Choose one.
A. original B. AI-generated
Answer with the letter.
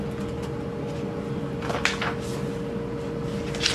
A